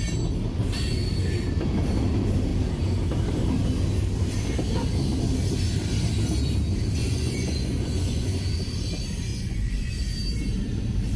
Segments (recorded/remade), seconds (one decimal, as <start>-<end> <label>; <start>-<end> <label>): 0.0-7.0 recorded; 7.0-8.4 remade; 8.4-9.3 recorded; 9.3-9.9 remade; 9.9-11.2 recorded